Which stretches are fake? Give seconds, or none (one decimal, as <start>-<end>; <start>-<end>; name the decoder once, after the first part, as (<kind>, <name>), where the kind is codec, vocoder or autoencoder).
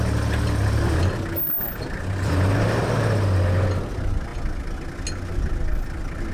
none